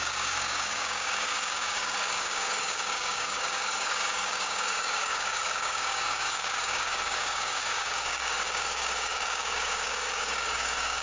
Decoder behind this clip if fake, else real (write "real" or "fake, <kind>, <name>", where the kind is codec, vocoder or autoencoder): fake, codec, DAC